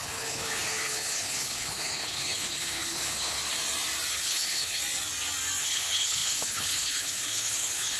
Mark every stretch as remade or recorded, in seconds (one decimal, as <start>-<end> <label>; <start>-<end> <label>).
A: 0.0-3.4 remade; 3.4-4.1 recorded; 4.1-4.8 remade; 4.8-5.6 recorded; 5.6-8.0 remade